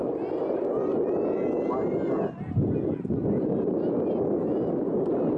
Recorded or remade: recorded